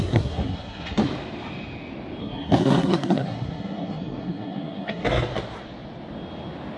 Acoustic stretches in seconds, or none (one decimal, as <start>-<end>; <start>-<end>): 1.1-2.2; 5.3-6.8